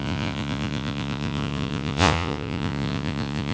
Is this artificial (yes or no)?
yes